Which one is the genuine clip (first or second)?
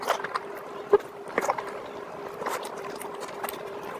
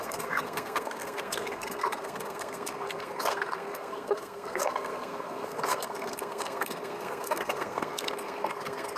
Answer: first